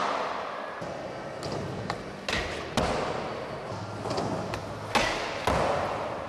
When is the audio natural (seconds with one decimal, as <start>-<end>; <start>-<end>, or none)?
0.0-6.3